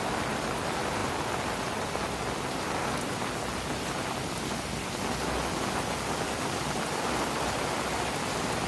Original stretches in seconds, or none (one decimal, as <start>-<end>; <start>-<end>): 0.0-8.7